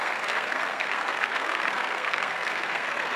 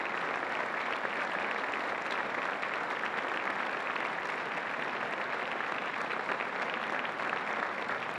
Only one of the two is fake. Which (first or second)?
first